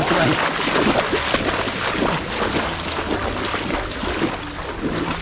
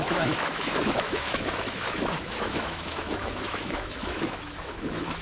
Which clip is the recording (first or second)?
first